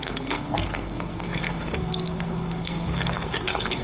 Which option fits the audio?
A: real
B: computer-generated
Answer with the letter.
B